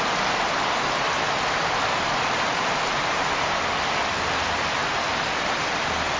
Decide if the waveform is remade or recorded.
recorded